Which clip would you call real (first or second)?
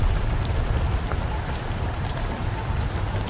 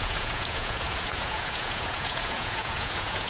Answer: first